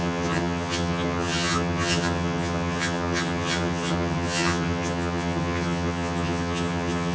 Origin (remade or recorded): remade